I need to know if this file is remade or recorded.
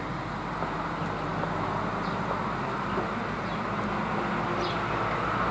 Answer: recorded